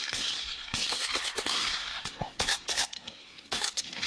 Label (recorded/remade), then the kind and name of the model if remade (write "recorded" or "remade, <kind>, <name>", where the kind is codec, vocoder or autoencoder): remade, codec, SNAC